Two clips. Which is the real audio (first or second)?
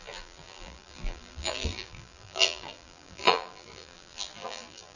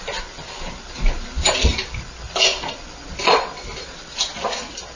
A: second